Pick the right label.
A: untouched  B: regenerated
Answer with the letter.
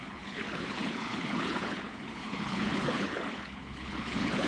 B